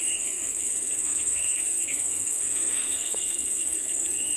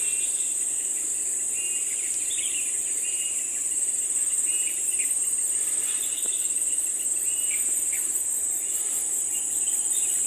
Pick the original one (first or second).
second